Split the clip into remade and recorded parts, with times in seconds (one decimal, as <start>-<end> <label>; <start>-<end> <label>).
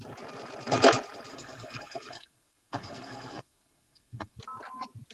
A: 0.0-1.3 recorded; 1.3-4.4 remade; 4.4-5.1 recorded